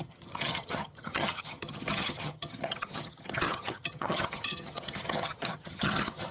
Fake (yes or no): yes